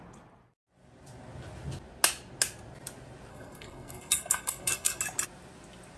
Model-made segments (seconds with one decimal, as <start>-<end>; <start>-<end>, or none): 3.3-5.0